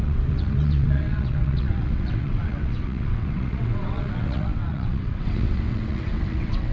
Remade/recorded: remade